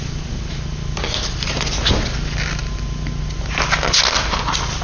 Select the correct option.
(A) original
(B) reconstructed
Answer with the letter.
A